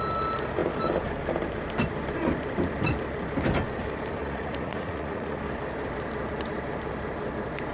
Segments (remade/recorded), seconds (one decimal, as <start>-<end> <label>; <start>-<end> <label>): 0.0-4.2 recorded; 4.2-5.4 remade; 5.4-7.7 recorded

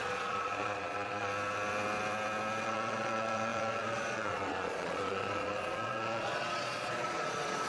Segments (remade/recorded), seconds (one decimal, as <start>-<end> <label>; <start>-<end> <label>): 0.0-1.3 remade; 1.3-2.6 recorded; 2.6-7.7 remade